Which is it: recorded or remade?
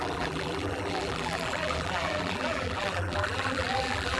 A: remade